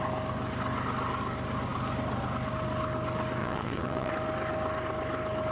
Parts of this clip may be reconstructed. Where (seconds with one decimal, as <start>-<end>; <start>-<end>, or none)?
3.4-4.1